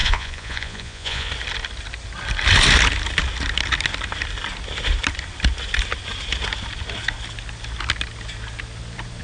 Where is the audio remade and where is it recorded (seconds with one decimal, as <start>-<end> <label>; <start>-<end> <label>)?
0.0-1.3 remade; 1.3-9.2 recorded